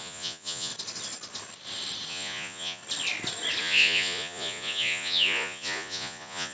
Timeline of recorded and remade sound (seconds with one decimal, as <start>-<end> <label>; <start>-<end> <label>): 0.0-0.7 remade; 0.7-2.1 recorded; 2.1-2.8 remade; 2.8-3.6 recorded; 3.6-6.5 remade

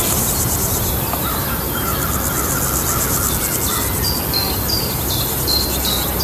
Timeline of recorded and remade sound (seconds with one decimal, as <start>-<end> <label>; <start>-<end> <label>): 0.0-1.9 remade; 1.9-4.3 recorded; 4.3-6.2 remade

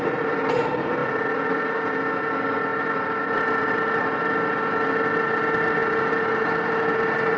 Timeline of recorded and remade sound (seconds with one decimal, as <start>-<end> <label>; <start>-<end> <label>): 0.0-2.7 recorded; 2.7-4.2 remade; 4.2-7.4 recorded

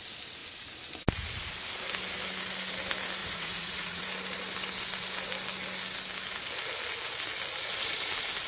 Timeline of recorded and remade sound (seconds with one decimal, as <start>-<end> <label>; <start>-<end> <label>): 0.0-3.2 recorded; 3.2-4.0 remade; 4.0-8.5 recorded